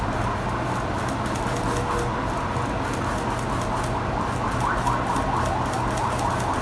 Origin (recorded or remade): recorded